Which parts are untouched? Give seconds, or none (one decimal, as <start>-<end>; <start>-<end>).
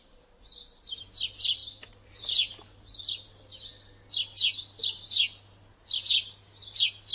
0.0-7.1